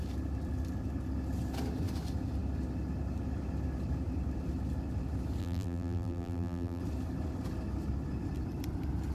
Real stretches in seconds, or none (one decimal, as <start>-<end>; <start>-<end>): 0.0-5.4; 6.8-9.1